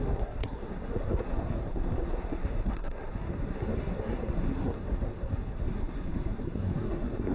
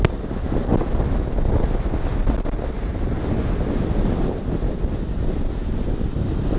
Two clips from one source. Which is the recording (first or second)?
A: second